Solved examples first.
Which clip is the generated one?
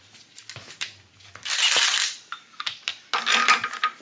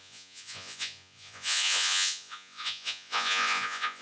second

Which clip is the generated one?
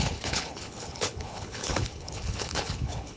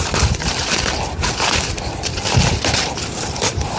first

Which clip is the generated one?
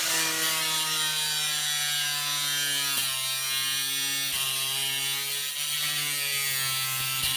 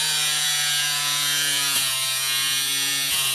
second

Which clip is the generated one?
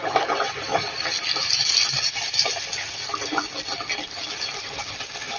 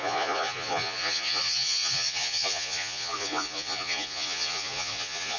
second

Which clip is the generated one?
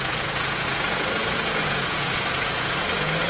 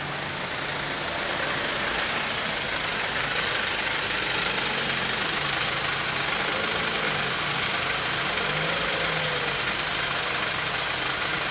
first